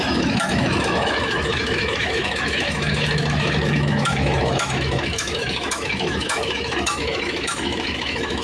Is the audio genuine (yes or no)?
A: no